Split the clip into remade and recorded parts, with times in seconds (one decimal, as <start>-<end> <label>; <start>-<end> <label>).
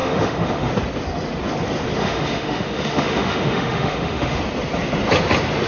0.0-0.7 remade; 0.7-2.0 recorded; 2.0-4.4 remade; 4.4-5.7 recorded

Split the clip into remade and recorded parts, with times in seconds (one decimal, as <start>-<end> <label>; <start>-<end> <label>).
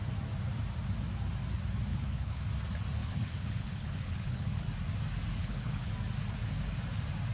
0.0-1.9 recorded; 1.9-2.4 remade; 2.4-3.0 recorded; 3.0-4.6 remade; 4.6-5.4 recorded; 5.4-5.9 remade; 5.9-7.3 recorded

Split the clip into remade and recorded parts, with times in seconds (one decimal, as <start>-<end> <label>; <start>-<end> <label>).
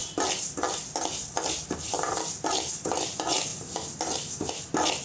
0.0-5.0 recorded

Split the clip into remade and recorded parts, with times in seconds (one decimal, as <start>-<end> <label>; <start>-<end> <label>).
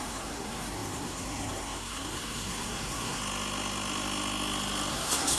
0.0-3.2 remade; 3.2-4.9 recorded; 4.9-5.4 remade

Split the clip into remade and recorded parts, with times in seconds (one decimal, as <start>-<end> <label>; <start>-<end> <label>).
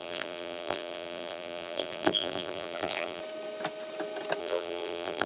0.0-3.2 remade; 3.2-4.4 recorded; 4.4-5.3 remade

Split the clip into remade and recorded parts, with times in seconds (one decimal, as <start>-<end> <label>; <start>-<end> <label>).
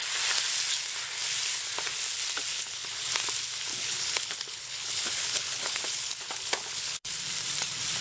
0.0-2.5 recorded; 2.5-3.1 remade; 3.1-3.7 recorded; 3.7-7.1 remade; 7.1-8.0 recorded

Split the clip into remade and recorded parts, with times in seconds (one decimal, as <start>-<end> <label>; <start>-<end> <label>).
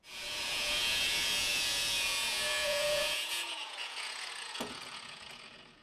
0.0-5.8 remade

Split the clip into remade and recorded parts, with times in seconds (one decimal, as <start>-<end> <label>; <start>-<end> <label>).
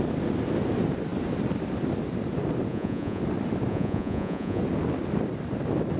0.0-2.7 recorded; 2.7-3.2 remade; 3.2-3.7 recorded; 3.7-4.6 remade; 4.6-6.0 recorded